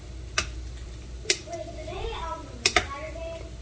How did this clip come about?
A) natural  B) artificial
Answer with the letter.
A